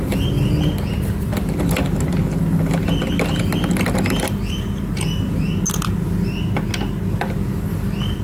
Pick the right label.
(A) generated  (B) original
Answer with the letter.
B